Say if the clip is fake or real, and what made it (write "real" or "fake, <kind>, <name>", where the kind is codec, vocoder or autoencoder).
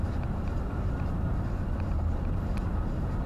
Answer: fake, vocoder, BigVGAN v2